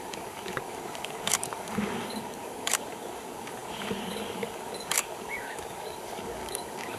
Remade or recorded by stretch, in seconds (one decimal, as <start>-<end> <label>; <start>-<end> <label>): 0.0-7.0 remade